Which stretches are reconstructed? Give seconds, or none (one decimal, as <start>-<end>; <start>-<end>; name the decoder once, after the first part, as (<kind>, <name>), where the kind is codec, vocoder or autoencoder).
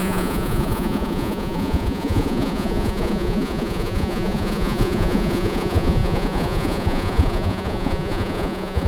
0.0-8.9 (vocoder, Vocos)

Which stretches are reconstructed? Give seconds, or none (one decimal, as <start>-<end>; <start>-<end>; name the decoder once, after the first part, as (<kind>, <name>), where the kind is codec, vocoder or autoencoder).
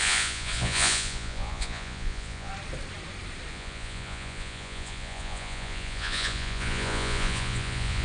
0.0-2.5 (vocoder, Vocos); 3.5-8.0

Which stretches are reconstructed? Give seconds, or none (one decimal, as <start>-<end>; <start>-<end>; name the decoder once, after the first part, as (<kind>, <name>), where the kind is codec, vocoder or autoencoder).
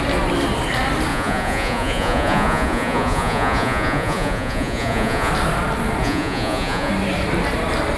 1.1-5.3 (vocoder, Vocos); 6.0-6.9